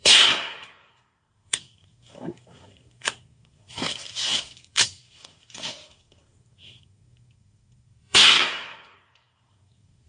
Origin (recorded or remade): remade